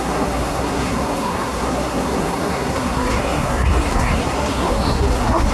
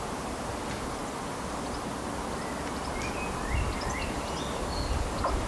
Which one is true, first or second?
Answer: second